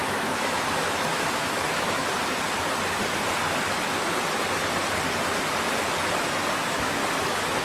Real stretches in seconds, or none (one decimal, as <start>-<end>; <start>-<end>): 2.0-6.6; 7.0-7.6